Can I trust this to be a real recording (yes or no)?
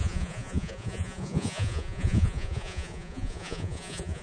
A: no